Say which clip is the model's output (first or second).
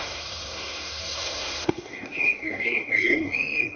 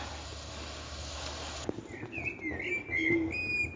first